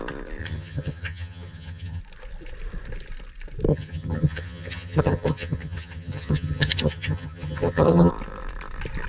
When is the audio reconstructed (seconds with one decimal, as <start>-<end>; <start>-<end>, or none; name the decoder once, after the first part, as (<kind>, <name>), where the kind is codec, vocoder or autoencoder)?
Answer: 0.4-2.0 (vocoder, HiFi-GAN); 3.7-8.1